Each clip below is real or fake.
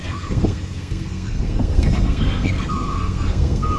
fake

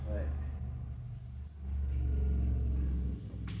real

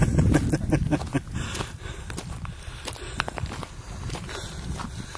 real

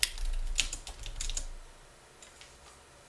real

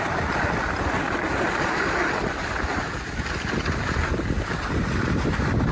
real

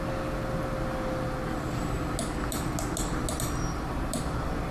real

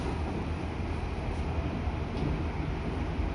real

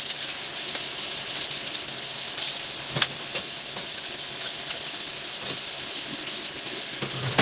real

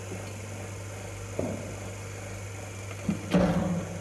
real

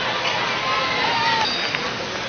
real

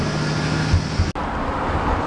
real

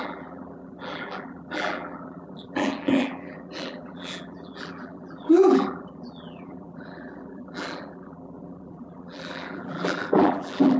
fake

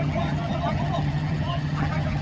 fake